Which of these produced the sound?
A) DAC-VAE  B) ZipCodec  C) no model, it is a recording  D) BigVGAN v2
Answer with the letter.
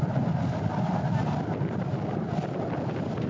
C